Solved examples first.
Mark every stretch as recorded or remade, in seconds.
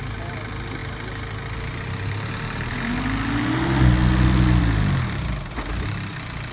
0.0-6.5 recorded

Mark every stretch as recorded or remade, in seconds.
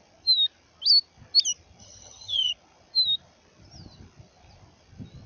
0.0-1.8 recorded; 1.8-2.5 remade; 2.5-5.3 recorded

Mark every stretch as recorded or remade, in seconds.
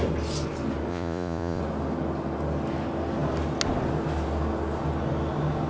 0.0-0.9 recorded; 0.9-1.6 remade; 1.6-5.7 recorded